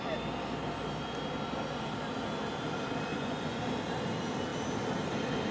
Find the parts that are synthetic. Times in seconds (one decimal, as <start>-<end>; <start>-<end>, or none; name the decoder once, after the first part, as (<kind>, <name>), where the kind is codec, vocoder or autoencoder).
3.1-3.6 (vocoder, Vocos)